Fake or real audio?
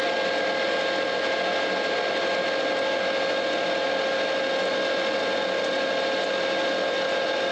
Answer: real